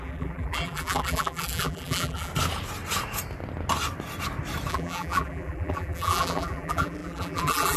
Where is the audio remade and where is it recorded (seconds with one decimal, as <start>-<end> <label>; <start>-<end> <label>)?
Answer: 0.0-2.3 remade; 2.3-4.7 recorded; 4.7-7.8 remade